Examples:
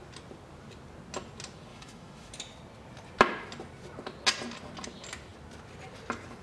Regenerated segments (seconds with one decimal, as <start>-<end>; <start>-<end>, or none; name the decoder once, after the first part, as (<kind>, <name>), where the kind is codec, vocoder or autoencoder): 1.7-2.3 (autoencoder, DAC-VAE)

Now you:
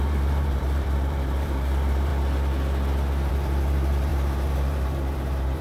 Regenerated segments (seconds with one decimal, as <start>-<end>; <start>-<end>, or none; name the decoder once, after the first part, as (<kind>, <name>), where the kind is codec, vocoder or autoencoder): 0.0-2.1 (vocoder, BigVGAN v2); 3.3-5.6

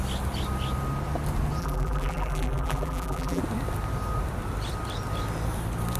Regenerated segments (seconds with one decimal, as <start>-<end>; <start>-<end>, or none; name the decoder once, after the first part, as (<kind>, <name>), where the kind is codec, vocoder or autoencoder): 1.6-3.4 (vocoder, BigVGAN v2)

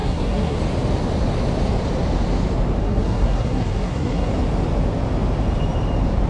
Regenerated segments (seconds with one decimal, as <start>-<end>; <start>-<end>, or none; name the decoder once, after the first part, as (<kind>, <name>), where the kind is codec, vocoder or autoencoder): 0.0-0.6 (codec, SNAC); 2.8-4.3

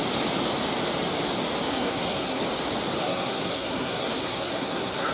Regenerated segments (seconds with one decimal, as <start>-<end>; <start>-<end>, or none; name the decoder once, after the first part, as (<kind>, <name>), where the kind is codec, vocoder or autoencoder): 1.7-2.4 (codec, SNAC); 3.0-5.1

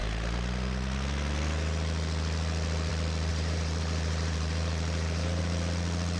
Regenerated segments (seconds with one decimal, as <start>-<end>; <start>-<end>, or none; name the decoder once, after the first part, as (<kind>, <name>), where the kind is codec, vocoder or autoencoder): 3.3-5.4 (vocoder, BigVGAN v2)

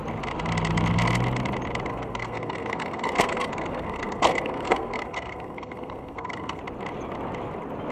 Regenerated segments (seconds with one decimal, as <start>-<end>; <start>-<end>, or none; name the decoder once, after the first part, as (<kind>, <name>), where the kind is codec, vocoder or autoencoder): 1.9-6.6 (codec, SNAC)